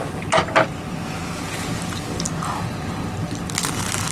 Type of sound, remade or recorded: recorded